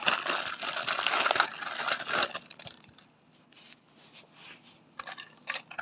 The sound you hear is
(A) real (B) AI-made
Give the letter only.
A